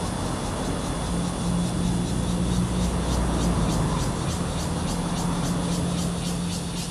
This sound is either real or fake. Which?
real